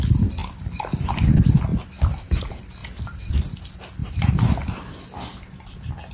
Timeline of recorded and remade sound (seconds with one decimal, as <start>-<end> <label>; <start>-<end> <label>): 0.0-0.4 recorded; 0.4-1.1 remade; 1.1-1.7 recorded; 1.7-2.4 remade; 2.4-2.8 recorded; 2.8-3.4 remade; 3.4-4.0 recorded; 4.0-4.8 remade; 4.8-6.1 recorded